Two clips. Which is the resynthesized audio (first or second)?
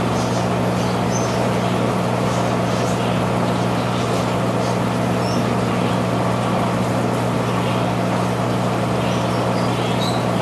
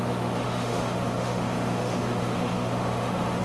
second